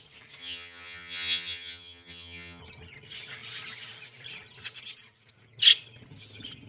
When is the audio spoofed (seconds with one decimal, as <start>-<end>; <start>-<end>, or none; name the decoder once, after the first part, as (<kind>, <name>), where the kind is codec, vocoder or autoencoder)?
0.4-2.6 (vocoder, HiFi-GAN)